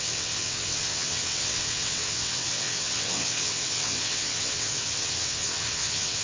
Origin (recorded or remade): remade